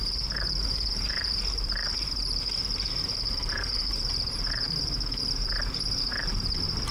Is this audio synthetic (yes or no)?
yes